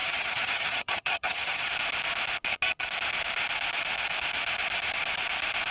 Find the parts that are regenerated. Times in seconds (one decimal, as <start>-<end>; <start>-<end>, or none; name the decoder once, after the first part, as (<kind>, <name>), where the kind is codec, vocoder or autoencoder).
0.0-1.7 (vocoder, HiFi-GAN)